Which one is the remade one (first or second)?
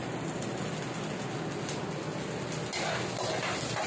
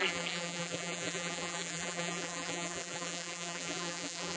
second